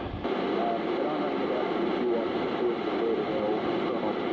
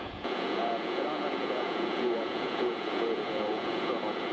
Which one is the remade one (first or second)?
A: second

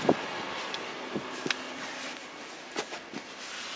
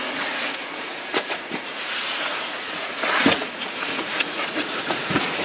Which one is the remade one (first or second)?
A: second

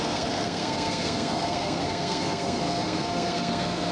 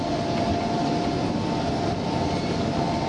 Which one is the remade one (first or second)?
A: first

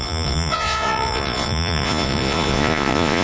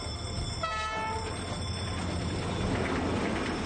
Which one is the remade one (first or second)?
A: first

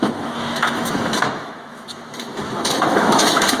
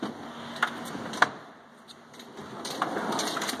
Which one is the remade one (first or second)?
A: first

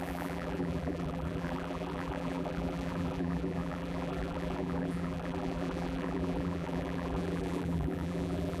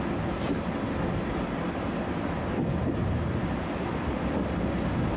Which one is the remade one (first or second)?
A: first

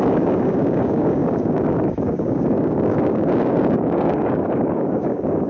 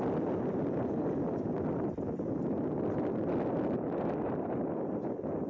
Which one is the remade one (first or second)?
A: first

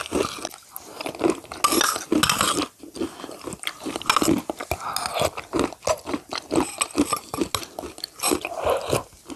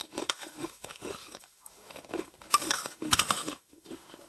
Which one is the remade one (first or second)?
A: second